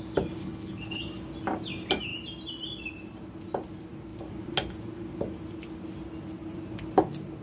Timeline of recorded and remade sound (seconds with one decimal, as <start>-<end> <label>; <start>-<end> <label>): 0.0-0.4 recorded; 0.4-1.0 remade; 1.0-7.4 recorded